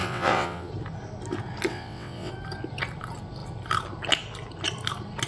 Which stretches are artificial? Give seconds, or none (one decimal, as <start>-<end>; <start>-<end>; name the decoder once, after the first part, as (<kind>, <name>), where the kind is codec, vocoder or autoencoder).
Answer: 0.0-0.7 (vocoder, WaveNeXt); 1.7-2.3